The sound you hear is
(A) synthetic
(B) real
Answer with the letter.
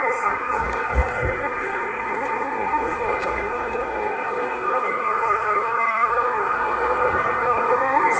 A